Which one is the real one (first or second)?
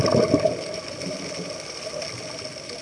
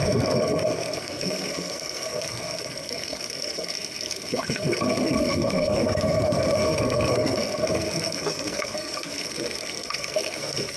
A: first